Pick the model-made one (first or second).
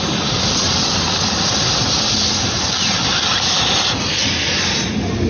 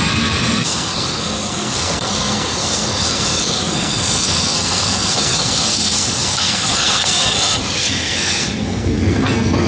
second